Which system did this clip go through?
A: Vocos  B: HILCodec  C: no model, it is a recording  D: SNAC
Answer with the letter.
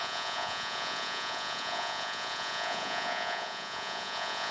A